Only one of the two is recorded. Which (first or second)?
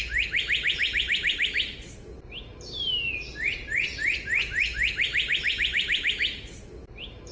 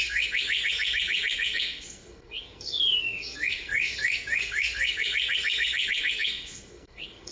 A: first